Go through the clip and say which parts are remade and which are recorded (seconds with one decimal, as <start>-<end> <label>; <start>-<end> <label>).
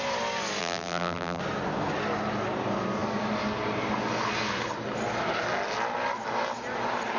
0.0-0.6 recorded; 0.6-1.4 remade; 1.4-7.2 recorded